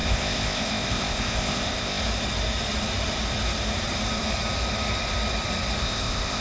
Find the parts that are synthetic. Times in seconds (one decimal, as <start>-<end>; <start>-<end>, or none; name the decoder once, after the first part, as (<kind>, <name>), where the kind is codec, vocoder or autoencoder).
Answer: 0.0-2.0 (codec, ZipCodec); 5.8-6.4